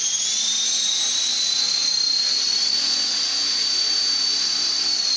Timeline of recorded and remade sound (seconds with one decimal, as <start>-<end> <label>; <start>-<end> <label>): 0.0-5.2 recorded